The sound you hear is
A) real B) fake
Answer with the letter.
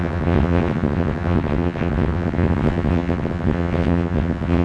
B